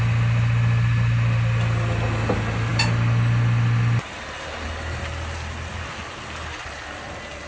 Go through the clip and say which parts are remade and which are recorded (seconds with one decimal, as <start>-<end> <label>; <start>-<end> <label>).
0.0-7.5 recorded